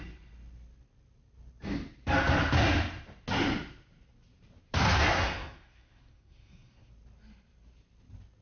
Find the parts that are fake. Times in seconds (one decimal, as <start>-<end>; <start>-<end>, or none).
5.0-6.9